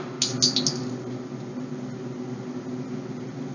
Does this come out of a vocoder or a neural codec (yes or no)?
no